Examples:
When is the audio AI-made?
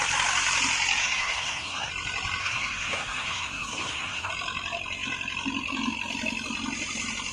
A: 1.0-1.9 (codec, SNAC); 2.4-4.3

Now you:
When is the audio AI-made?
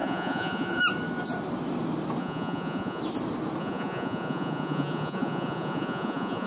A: 0.0-0.8 (vocoder, Vocos); 2.2-3.0; 3.6-6.5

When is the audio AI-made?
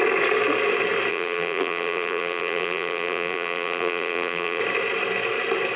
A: 1.1-4.6 (vocoder, BigVGAN v2)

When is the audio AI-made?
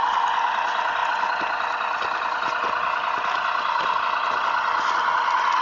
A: none